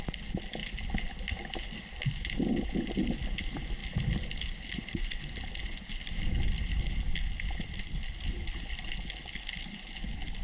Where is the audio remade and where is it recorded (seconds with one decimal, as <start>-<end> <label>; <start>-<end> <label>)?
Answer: 0.0-10.4 recorded